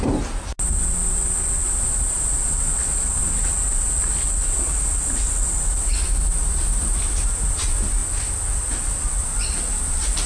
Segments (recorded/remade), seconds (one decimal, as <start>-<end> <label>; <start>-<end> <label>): 0.0-10.3 recorded

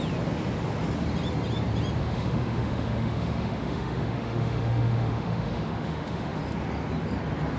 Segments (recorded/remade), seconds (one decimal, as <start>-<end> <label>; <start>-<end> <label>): 0.0-2.0 recorded; 2.0-6.4 remade; 6.4-7.6 recorded

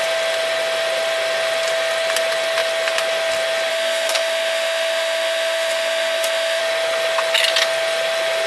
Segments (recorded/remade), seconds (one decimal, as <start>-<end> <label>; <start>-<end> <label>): 0.0-3.7 recorded; 3.7-6.6 remade; 6.6-8.5 recorded

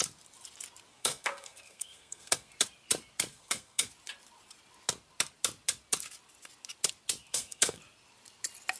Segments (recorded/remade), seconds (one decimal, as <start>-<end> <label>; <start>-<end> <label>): 0.0-0.9 recorded; 0.9-2.5 remade; 2.5-3.3 recorded; 3.3-3.9 remade; 3.9-7.3 recorded; 7.3-7.8 remade; 7.8-8.8 recorded

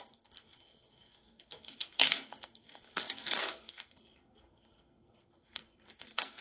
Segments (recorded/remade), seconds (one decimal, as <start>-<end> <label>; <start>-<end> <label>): 0.0-6.4 remade

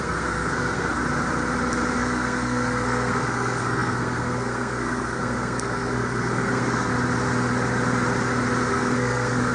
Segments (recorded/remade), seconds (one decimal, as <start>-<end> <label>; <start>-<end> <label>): 0.0-1.0 remade; 1.0-2.0 recorded; 2.0-6.9 remade; 6.9-8.7 recorded; 8.7-9.5 remade